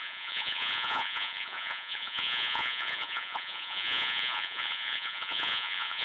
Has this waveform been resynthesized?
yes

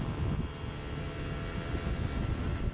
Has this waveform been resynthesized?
no